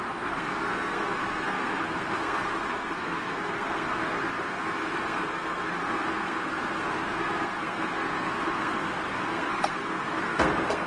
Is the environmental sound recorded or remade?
remade